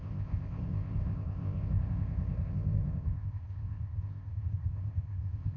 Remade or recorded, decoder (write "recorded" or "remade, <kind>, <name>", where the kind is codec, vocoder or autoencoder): remade, codec, ZipCodec